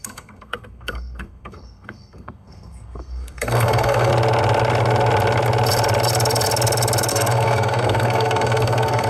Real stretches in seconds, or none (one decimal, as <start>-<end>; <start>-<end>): 4.1-7.1